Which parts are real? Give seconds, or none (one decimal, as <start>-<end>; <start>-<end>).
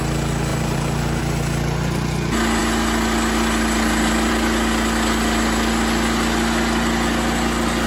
0.0-0.5; 1.2-7.9